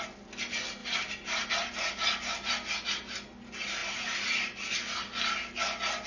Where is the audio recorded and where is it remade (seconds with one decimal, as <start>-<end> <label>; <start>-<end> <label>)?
0.0-0.8 recorded; 0.8-1.5 remade; 1.5-3.8 recorded; 3.8-4.7 remade; 4.7-6.1 recorded